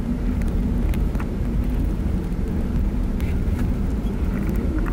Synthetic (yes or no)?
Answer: yes